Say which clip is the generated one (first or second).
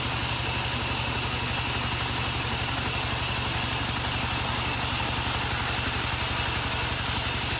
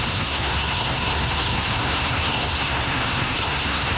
second